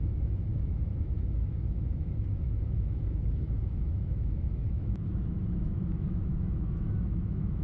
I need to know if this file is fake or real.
fake